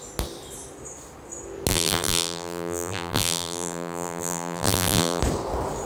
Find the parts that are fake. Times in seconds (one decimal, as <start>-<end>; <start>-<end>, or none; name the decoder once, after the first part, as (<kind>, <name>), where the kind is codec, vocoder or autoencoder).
1.7-5.2 (vocoder, BigVGAN v2)